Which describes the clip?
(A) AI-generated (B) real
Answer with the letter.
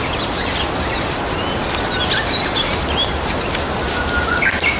B